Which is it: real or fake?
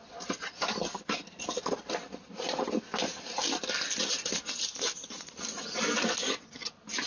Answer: real